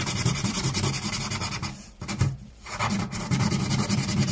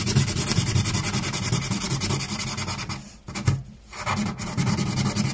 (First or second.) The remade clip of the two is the first